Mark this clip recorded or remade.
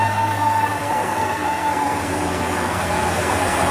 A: remade